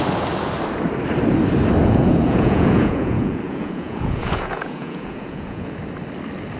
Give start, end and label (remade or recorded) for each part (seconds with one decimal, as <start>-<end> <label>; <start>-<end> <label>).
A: 0.0-1.8 recorded; 1.8-5.8 remade; 5.8-6.6 recorded